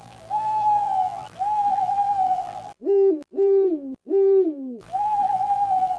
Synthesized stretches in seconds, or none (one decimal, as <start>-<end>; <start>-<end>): 0.0-6.0